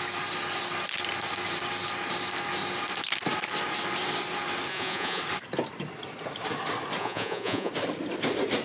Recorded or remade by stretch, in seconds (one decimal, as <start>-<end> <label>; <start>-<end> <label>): 0.0-4.7 recorded; 4.7-5.2 remade; 5.2-7.0 recorded; 7.0-7.7 remade; 7.7-8.6 recorded